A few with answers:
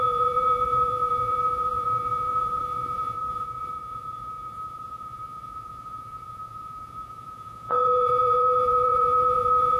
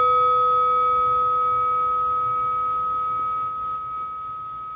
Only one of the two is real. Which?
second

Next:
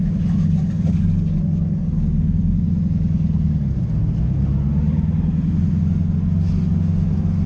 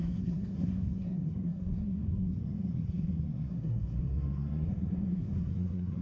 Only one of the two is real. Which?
first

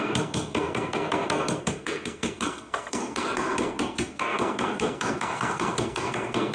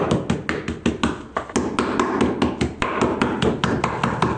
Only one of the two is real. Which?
second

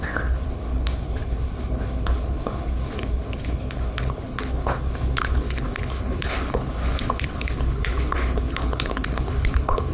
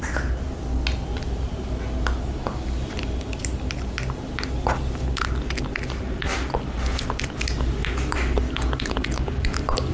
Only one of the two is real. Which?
second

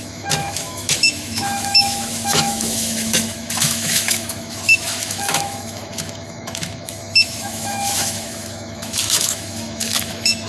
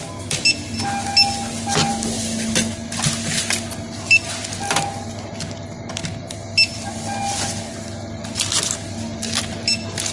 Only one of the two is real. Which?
second